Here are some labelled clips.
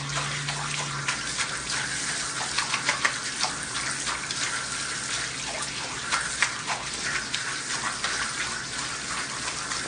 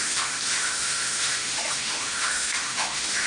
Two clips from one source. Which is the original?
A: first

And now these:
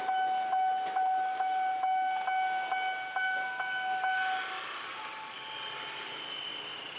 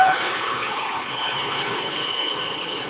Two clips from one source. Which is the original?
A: first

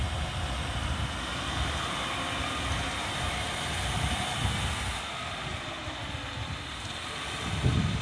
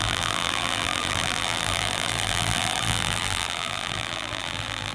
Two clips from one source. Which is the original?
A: first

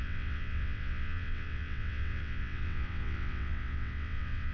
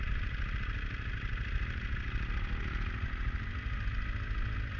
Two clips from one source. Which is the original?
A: second